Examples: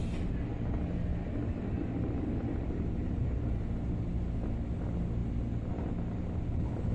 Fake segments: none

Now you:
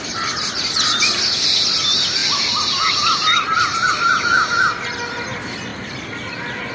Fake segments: none

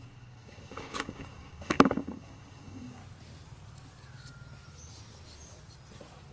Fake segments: 0.0-3.0 (codec, DAC)

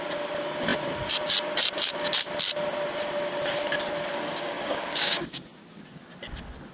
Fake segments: 4.1-5.4 (codec, DAC)